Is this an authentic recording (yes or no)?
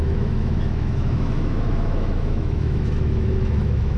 no